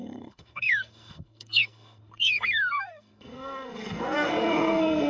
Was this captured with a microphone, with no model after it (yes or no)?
no